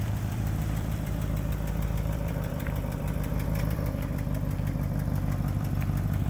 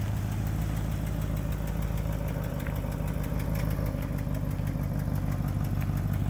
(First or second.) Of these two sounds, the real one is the second